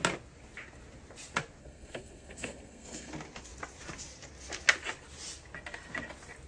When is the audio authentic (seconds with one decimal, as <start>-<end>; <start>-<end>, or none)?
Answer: 0.0-1.6; 3.1-6.5